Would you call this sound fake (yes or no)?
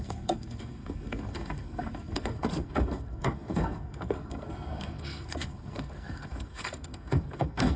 yes